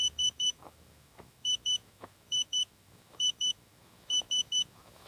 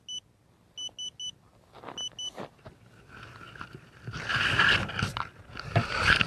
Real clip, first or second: second